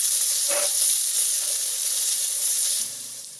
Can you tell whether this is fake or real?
fake